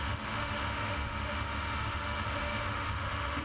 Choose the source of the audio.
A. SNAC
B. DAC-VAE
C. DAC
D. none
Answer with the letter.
B